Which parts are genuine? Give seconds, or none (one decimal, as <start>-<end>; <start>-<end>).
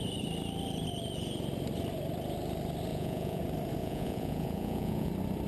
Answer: 0.0-2.9; 3.4-3.8; 5.1-5.5